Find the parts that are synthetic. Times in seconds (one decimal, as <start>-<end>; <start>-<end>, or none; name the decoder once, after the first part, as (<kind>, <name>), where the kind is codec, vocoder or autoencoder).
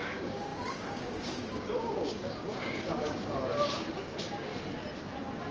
0.0-4.5 (codec, DAC)